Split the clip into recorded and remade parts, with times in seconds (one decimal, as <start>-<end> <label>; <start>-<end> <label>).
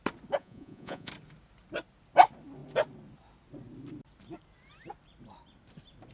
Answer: 0.0-0.4 recorded; 0.4-1.1 remade; 1.1-6.1 recorded